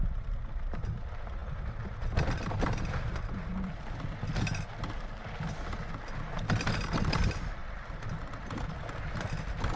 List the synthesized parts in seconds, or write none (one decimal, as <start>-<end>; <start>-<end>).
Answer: none